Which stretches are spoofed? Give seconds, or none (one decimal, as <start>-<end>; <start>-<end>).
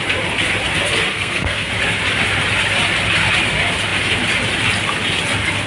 1.1-1.7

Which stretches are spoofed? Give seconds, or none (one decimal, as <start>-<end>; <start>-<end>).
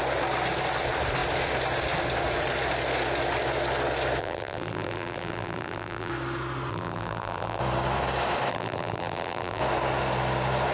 4.2-6.1; 6.7-7.6; 8.5-9.6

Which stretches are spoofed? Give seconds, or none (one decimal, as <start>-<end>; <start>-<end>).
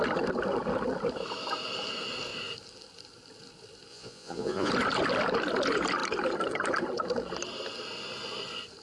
3.9-4.7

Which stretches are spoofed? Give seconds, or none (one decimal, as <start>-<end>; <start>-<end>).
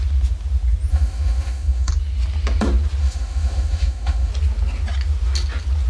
0.9-1.9; 3.0-4.3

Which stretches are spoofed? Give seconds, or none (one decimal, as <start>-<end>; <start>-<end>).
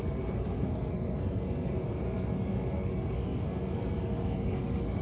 0.0-5.0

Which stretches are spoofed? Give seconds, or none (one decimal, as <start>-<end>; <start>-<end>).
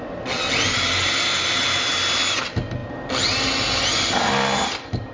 none